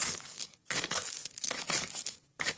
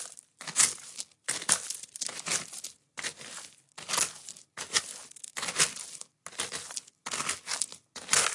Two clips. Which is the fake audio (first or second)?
first